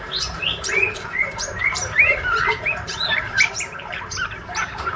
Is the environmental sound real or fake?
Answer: fake